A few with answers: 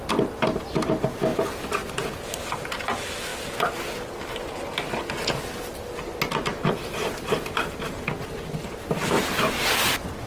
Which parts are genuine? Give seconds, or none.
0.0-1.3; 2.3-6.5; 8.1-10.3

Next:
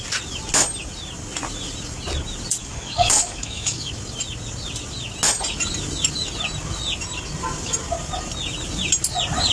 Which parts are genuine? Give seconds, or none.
0.0-2.6; 3.9-9.5

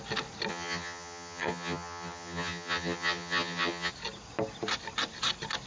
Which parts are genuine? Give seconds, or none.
0.0-0.5; 3.9-5.7

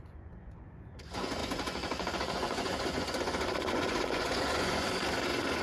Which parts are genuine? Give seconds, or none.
none

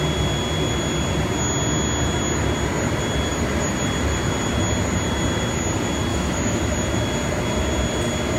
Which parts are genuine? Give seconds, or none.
0.0-6.1; 6.6-8.4